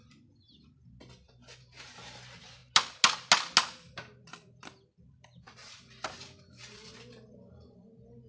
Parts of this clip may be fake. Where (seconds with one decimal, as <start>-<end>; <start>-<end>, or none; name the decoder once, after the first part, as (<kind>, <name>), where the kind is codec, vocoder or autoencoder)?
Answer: 4.3-7.9 (vocoder, BigVGAN v2)